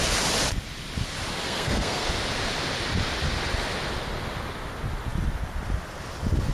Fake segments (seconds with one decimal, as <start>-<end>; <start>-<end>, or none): 1.3-2.1